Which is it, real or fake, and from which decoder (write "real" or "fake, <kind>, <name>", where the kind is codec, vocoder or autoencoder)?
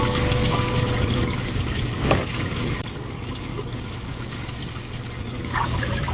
fake, codec, DAC